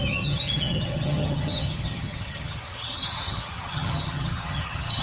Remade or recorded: remade